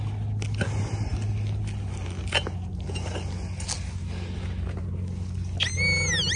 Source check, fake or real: real